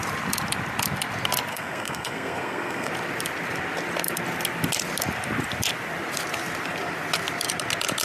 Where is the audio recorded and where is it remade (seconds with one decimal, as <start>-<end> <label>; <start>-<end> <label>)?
0.0-1.5 recorded; 1.5-2.9 remade; 2.9-8.0 recorded